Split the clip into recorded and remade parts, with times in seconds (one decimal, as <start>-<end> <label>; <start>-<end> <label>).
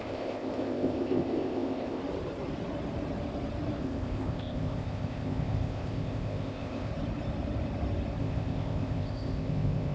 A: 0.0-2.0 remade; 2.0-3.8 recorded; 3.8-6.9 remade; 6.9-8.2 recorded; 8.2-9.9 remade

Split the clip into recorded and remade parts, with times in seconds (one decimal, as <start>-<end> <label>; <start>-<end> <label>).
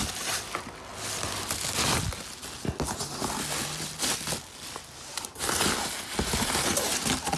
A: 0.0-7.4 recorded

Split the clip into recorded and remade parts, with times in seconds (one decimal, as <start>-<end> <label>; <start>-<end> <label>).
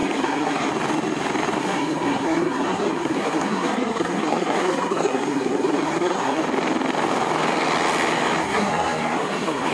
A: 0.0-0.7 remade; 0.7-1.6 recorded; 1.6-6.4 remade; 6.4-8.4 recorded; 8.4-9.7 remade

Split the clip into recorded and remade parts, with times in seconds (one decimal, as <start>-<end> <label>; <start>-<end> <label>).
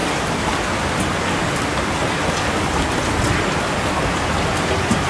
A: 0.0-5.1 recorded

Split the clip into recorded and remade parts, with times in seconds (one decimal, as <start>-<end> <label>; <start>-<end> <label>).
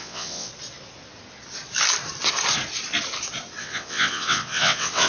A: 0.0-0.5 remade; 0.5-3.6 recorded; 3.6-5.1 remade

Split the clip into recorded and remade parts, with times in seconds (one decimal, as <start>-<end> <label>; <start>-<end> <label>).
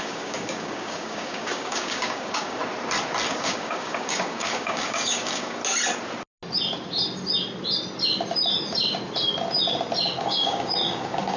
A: 0.0-2.6 remade; 2.6-3.3 recorded; 3.3-5.6 remade; 5.6-10.2 recorded; 10.2-11.4 remade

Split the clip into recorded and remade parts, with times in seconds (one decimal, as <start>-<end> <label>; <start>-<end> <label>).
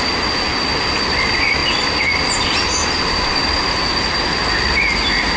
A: 0.0-5.4 recorded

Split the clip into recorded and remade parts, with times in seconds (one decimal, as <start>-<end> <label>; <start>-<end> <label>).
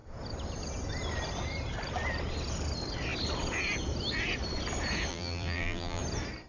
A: 0.0-5.1 recorded; 5.1-6.0 remade; 6.0-6.5 recorded